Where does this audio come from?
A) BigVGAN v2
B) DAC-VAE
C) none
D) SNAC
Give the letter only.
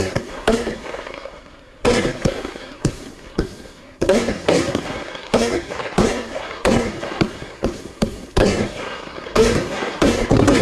D